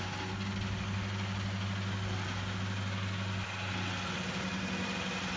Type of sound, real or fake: real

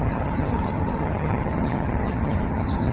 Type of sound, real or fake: fake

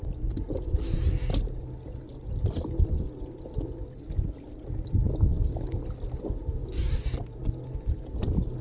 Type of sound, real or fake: real